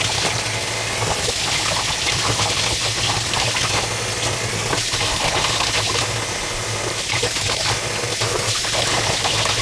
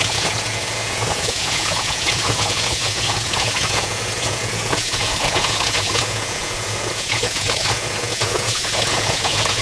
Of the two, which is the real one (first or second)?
first